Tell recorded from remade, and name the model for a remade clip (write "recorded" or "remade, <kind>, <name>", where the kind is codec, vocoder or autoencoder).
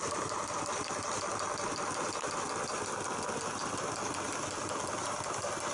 recorded